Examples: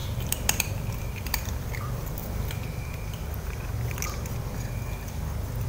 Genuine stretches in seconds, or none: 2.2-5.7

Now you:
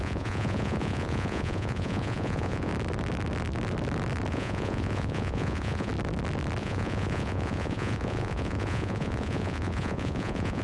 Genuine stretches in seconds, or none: 2.7-4.3; 5.9-6.6

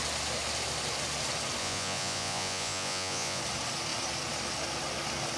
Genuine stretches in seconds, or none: 0.0-1.6; 3.4-5.4

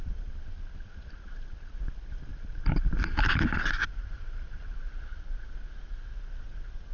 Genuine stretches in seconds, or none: 0.0-2.3; 4.9-6.9